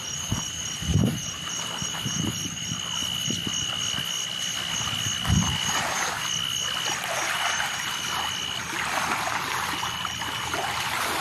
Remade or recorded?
recorded